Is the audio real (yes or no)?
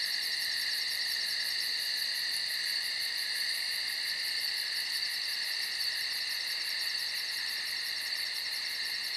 yes